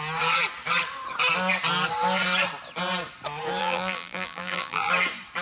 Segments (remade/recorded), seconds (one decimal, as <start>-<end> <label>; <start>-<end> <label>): 0.0-3.6 recorded; 3.6-4.9 remade; 4.9-5.4 recorded